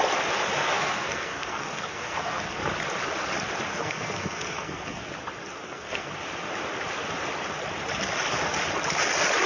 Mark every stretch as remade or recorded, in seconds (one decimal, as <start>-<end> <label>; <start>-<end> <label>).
0.0-0.6 recorded; 0.6-2.6 remade; 2.6-3.7 recorded; 3.7-5.0 remade; 5.0-5.6 recorded; 5.6-6.1 remade; 6.1-9.5 recorded

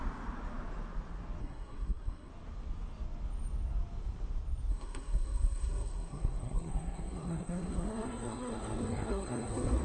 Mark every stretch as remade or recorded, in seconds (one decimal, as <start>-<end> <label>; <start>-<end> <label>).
0.0-1.4 recorded; 1.4-2.3 remade; 2.3-4.7 recorded; 4.7-9.8 remade

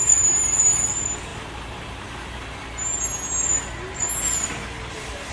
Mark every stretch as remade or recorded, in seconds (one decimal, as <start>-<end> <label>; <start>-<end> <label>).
0.0-0.9 remade; 0.9-5.3 recorded

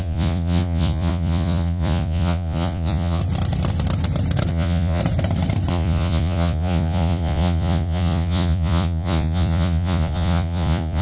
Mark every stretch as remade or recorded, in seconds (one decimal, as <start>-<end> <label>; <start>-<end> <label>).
0.0-3.2 remade; 3.2-4.5 recorded; 4.5-5.0 remade; 5.0-5.7 recorded; 5.7-11.0 remade

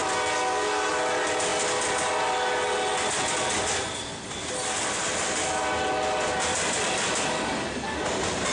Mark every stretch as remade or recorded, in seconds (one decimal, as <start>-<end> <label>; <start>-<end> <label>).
0.0-8.5 recorded

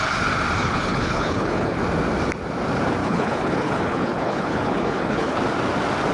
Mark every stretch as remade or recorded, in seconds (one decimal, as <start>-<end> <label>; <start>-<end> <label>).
0.0-0.6 recorded; 0.6-1.8 remade; 1.8-3.0 recorded; 3.0-5.4 remade; 5.4-6.1 recorded

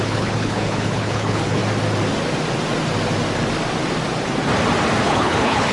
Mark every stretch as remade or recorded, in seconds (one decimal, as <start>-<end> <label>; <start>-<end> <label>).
0.0-1.6 remade; 1.6-5.0 recorded; 5.0-5.7 remade